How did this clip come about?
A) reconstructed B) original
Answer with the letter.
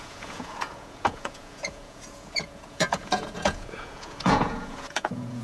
A